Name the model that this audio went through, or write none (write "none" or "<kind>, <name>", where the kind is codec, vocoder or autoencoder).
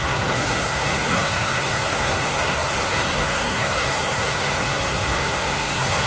codec, SNAC